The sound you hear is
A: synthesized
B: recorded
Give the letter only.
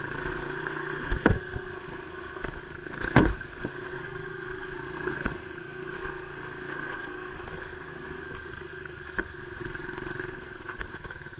A